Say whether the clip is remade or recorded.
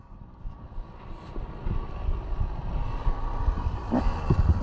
recorded